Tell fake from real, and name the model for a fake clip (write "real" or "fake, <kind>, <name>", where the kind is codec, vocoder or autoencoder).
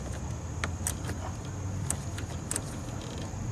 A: real